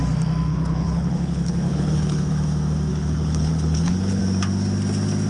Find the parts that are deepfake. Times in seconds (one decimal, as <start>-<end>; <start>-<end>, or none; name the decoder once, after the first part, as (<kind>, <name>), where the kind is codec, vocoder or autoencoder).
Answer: 0.5-2.4 (codec, HILCodec); 2.9-4.2